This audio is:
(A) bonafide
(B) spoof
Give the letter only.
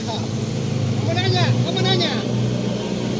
A